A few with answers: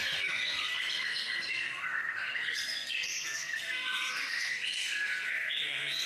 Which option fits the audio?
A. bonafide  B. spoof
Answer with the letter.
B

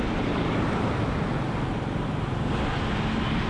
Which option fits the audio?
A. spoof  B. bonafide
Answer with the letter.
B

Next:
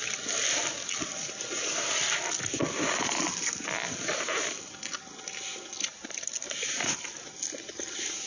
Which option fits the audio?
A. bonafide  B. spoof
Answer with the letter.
A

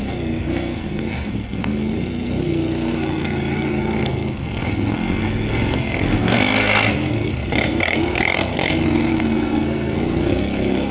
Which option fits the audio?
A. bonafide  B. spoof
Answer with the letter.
B